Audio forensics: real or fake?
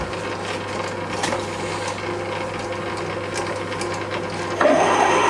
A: real